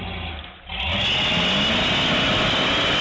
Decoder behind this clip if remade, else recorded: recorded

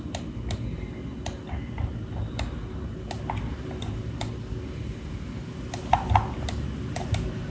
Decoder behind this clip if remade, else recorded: recorded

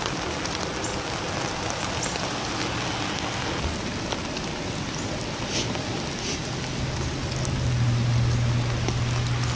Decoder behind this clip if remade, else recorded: recorded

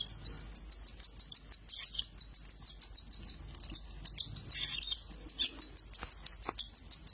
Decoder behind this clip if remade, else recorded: recorded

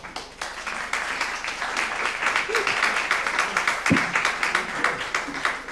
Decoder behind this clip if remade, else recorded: recorded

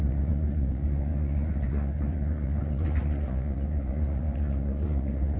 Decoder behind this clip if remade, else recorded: remade, vocoder, Vocos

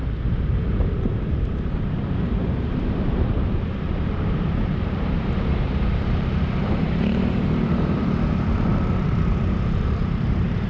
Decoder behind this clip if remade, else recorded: remade, vocoder, BigVGAN v2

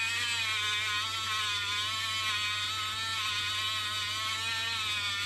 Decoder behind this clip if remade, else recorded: recorded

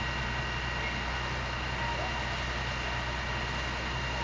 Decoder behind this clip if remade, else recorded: recorded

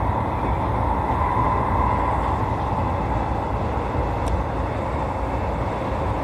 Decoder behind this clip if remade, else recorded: recorded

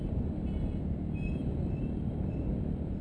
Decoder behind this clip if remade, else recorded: recorded